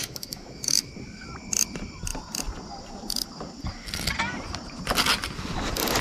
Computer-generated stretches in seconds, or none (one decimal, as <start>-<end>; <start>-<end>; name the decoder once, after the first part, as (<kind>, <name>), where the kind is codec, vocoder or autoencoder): 0.0-0.9 (autoencoder, DAC-VAE)